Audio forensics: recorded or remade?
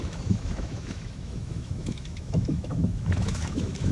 remade